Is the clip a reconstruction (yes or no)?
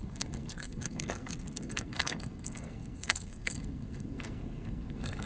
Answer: yes